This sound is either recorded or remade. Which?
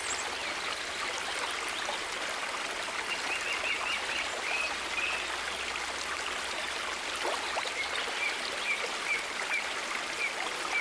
recorded